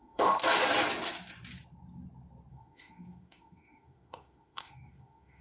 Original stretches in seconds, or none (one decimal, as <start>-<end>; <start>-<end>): 0.4-2.5